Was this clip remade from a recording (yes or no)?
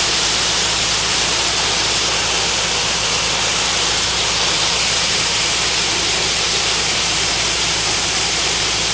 yes